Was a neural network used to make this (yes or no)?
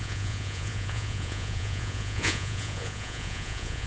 yes